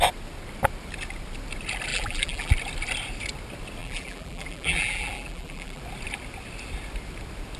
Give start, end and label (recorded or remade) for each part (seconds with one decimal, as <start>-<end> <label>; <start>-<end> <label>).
0.0-1.9 recorded; 1.9-2.5 remade; 2.5-3.8 recorded; 3.8-5.8 remade; 5.8-7.6 recorded